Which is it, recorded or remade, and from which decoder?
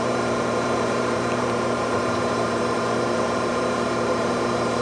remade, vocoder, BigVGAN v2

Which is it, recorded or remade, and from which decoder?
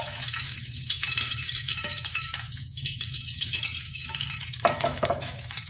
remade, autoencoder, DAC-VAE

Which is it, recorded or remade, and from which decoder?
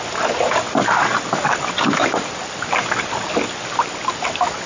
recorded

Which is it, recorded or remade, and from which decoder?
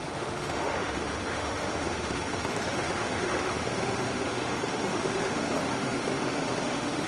remade, autoencoder, DAC-VAE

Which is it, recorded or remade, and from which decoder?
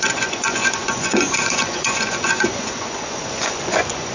remade, vocoder, Vocos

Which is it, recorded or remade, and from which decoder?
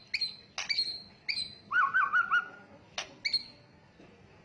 recorded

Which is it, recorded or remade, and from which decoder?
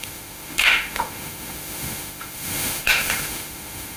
remade, autoencoder, DAC-VAE